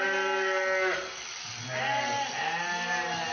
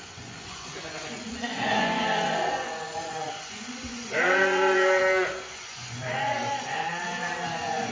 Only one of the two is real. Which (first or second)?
first